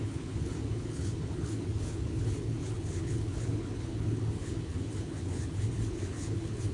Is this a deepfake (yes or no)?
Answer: yes